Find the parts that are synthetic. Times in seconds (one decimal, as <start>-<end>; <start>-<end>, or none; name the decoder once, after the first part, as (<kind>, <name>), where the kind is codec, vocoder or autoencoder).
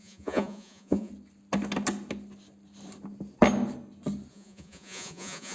0.0-1.1 (vocoder, Vocos); 4.3-5.5